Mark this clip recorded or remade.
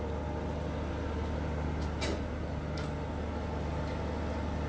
recorded